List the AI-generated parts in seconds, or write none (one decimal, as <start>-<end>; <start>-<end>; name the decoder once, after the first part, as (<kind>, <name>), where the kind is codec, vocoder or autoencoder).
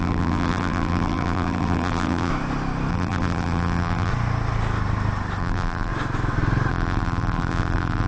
0.0-2.3 (vocoder, BigVGAN v2); 2.9-4.1; 5.4-5.9; 6.7-8.1